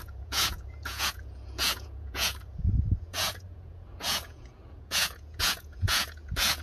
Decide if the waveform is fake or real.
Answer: fake